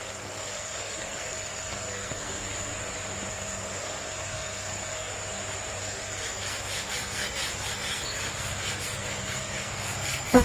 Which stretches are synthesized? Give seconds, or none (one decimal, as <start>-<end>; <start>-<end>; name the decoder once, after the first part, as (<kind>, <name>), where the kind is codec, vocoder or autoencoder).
0.0-2.7 (codec, SNAC); 3.3-5.1; 5.8-10.4